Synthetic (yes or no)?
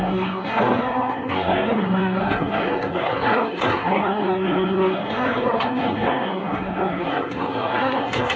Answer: yes